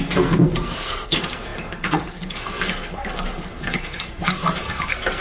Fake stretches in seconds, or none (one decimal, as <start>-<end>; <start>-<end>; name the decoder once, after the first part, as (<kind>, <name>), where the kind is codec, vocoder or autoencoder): 0.0-5.2 (codec, SNAC)

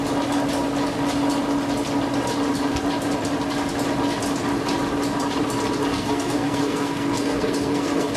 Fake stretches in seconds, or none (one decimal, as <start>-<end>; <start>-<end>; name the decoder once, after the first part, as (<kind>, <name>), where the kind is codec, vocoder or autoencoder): 5.9-8.2 (codec, SNAC)